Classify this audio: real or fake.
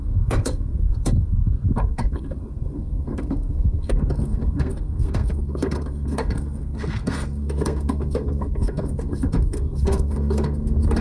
fake